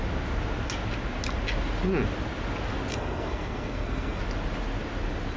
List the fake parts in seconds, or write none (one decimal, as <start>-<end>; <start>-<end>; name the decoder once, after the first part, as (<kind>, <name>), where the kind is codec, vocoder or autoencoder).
2.9-4.2 (codec, SNAC)